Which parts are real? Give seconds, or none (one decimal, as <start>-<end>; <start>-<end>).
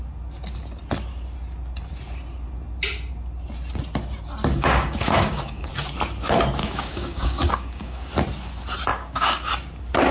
0.0-4.5; 5.7-6.6; 8.1-8.9; 9.5-10.1